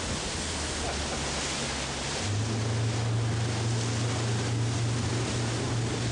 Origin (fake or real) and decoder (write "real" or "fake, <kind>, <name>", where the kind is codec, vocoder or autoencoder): real